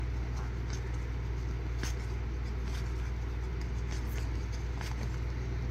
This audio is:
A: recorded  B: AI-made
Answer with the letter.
A